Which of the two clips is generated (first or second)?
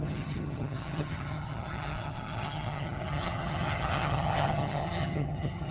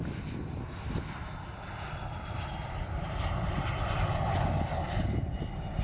first